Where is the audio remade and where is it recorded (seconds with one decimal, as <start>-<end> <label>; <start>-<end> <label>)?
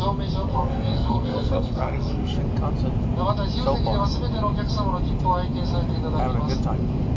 0.0-0.5 recorded; 0.5-2.4 remade; 2.4-7.2 recorded